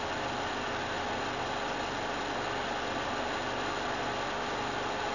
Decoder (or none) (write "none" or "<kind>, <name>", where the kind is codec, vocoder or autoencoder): none